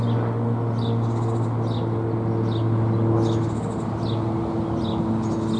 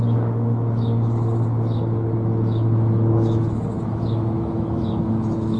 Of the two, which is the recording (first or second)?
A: first